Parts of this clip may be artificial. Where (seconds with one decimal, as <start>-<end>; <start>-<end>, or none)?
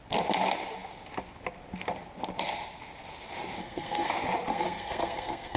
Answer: 3.6-4.1; 4.5-5.6